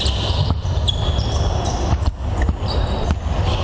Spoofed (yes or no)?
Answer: no